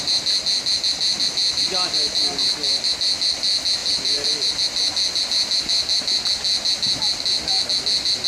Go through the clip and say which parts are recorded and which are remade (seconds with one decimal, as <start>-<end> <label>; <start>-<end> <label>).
0.0-8.3 recorded